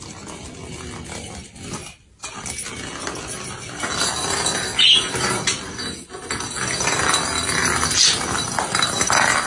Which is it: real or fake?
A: real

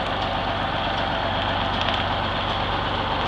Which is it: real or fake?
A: real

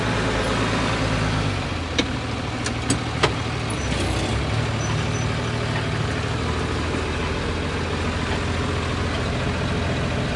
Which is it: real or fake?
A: real